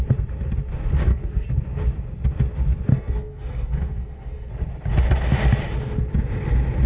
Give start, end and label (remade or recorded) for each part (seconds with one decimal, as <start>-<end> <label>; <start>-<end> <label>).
0.0-1.1 recorded; 1.1-1.6 remade; 1.6-2.9 recorded; 2.9-4.5 remade; 4.5-6.9 recorded